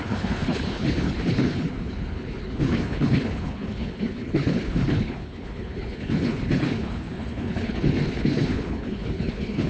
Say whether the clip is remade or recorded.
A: remade